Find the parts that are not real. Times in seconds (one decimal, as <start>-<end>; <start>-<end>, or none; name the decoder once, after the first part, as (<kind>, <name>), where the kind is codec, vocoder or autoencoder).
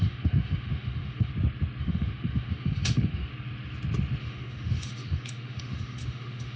0.0-1.3 (autoencoder, DAC-VAE); 1.8-3.3; 4.2-6.6